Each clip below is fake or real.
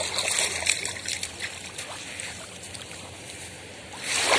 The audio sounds fake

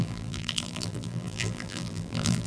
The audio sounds fake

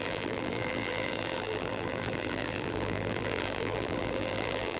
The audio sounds fake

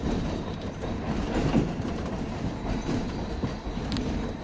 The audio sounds fake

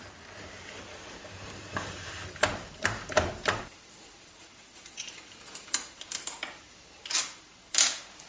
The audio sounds fake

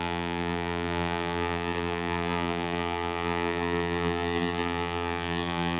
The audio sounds fake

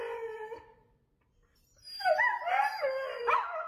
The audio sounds real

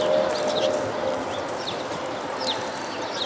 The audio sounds real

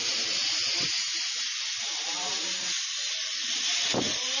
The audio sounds fake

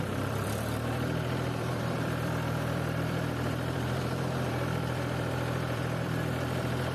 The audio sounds fake